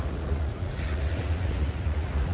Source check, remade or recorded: remade